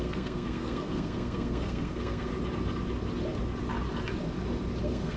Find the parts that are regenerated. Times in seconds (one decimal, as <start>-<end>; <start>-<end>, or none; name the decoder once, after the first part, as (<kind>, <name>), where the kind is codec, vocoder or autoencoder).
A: 0.0-2.3 (codec, SNAC); 4.8-5.2

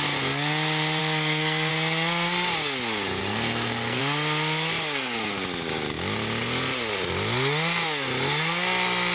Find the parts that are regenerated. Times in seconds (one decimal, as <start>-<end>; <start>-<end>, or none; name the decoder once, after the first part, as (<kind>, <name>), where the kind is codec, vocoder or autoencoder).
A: 1.0-1.7 (codec, SNAC); 3.2-4.0

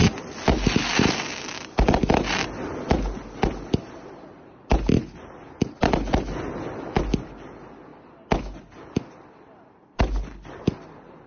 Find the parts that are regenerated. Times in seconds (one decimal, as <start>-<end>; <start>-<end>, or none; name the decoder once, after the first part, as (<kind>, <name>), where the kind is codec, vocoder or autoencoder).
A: none

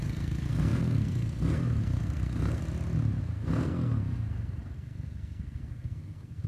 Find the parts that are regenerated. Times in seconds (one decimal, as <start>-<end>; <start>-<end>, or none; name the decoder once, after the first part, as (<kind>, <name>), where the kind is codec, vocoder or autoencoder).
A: 0.0-2.6 (codec, SNAC); 3.2-6.5

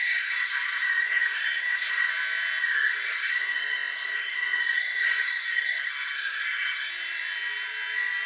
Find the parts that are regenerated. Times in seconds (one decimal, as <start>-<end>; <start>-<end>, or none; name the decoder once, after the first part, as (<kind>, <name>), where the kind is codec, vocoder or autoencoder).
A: 0.0-2.1 (codec, SNAC); 2.6-6.9